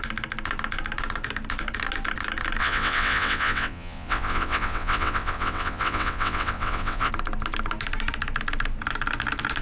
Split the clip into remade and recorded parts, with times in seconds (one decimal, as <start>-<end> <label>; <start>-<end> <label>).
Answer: 0.0-2.6 recorded; 2.6-7.1 remade; 7.1-9.6 recorded